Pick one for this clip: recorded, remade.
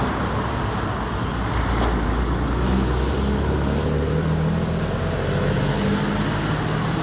recorded